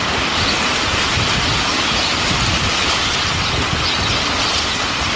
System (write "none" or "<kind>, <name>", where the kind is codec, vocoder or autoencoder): none